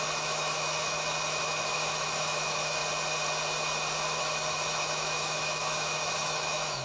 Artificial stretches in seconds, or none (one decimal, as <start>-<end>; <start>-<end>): 0.0-2.8; 4.2-6.8